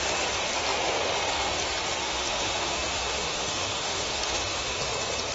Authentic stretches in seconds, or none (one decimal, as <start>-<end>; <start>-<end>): 0.0-2.0; 4.7-5.3